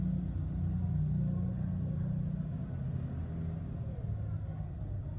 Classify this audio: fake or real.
real